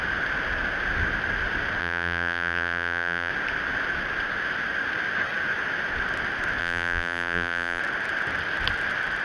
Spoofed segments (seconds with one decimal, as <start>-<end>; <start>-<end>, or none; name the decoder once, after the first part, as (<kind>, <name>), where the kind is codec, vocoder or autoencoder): 1.8-3.3 (vocoder, BigVGAN v2); 6.6-7.8